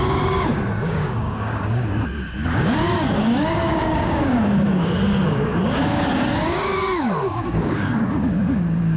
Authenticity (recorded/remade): remade